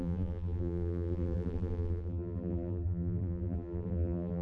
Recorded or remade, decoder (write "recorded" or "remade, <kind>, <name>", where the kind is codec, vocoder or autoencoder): remade, vocoder, BigVGAN v2